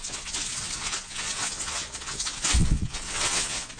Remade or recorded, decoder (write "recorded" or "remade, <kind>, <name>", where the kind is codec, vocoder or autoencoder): remade, vocoder, Vocos